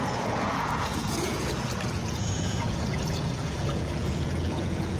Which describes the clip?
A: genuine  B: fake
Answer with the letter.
B